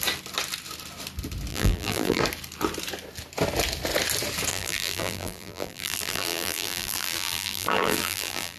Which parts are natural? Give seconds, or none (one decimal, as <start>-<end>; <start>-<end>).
0.0-1.5; 2.2-4.5